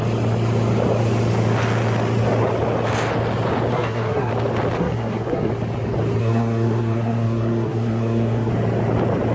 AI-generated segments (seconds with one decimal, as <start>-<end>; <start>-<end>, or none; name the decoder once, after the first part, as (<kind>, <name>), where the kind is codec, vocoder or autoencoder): 3.7-4.3 (codec, SNAC); 4.8-5.5; 6.2-8.5